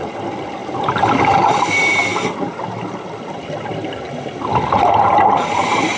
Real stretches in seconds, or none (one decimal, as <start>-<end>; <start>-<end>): 0.0-6.0